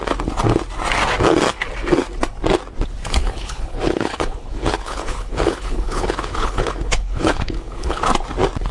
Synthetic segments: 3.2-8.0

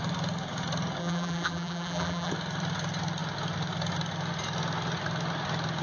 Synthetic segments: 1.0-2.3

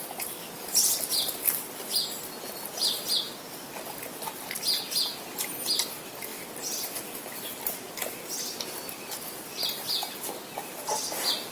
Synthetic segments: none

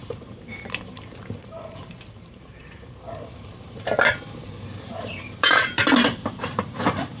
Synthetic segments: 0.0-7.2

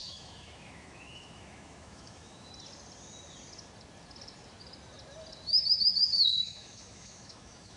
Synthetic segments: 0.0-2.5; 6.3-7.8

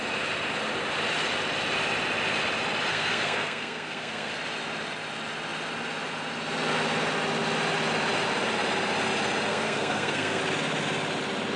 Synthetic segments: 2.9-4.3; 9.5-10.4

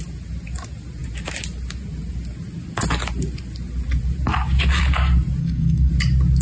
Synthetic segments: 5.4-5.9

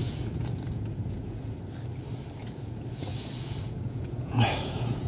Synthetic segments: 0.0-1.6; 2.4-5.1